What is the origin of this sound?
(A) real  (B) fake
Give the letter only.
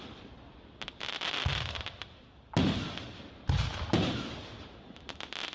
A